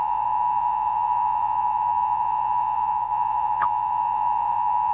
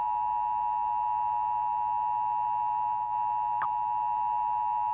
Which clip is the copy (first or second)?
first